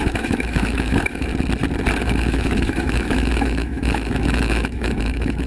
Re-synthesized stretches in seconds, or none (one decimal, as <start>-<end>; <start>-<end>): 0.0-1.3; 2.0-5.5